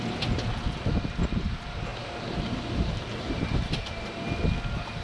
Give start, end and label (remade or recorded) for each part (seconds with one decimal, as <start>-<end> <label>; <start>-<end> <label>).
0.0-1.9 recorded; 1.9-3.9 remade; 3.9-5.0 recorded